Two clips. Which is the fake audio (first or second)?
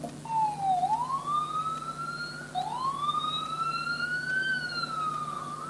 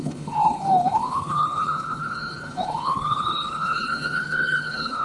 second